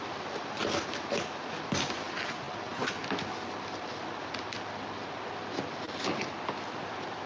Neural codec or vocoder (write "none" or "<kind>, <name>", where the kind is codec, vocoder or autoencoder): none